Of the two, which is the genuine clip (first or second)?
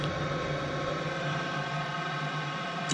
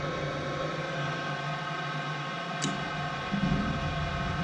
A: second